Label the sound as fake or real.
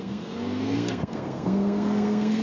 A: fake